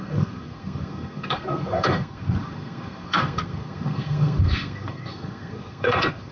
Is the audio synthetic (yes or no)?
yes